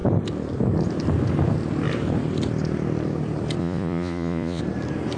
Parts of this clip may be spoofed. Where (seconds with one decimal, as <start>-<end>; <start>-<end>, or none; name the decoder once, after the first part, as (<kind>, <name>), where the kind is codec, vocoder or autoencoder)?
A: 3.6-4.6 (vocoder, Vocos)